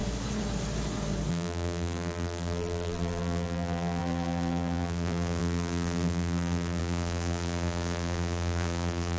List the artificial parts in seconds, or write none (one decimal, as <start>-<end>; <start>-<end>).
1.3-9.2